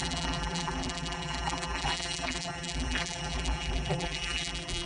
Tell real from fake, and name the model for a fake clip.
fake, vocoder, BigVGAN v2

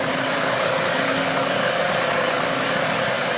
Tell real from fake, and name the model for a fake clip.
fake, codec, DAC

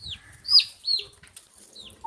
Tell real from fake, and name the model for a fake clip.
real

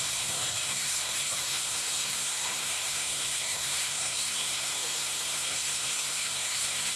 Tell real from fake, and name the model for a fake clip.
fake, codec, SNAC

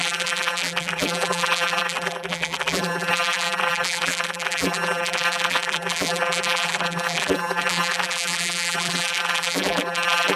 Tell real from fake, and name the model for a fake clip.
fake, vocoder, BigVGAN v2